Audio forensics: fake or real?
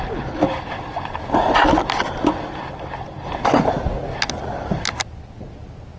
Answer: real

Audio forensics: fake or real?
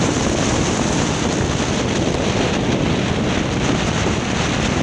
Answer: real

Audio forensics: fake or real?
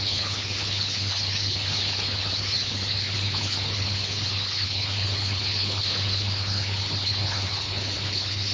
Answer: fake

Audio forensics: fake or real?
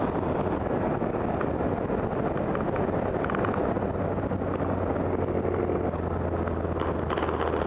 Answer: real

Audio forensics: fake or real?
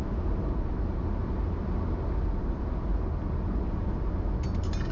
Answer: real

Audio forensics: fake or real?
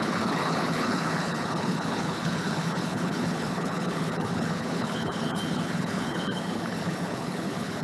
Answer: fake